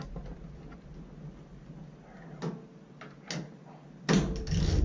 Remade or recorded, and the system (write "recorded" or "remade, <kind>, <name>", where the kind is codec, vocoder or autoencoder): recorded